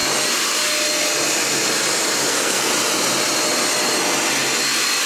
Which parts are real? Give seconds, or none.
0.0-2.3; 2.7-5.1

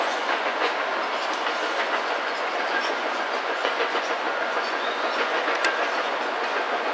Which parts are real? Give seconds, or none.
0.7-1.8